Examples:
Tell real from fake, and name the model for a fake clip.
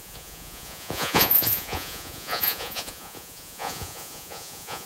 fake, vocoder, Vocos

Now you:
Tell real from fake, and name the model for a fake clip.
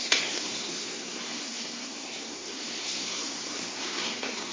fake, codec, SNAC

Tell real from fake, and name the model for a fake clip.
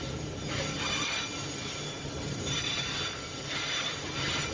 real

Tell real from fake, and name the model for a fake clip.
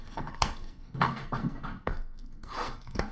fake, codec, SNAC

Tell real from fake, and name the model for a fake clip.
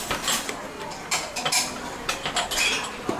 real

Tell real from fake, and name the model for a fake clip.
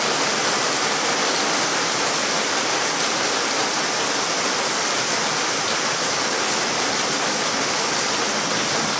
real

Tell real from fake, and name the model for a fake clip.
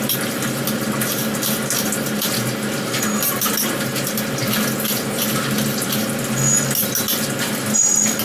real